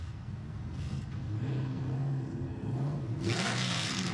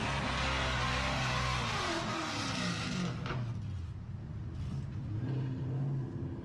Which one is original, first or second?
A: second